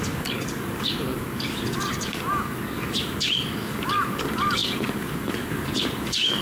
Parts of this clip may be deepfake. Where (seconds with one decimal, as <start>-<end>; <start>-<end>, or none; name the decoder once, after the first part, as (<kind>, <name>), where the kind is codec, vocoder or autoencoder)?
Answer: 0.0-6.4 (codec, DAC)